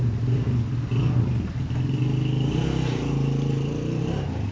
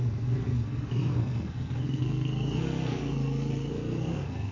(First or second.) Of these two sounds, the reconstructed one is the second